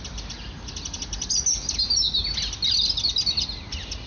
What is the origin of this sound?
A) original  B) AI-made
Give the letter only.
A